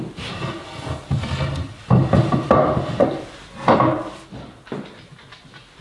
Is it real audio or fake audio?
real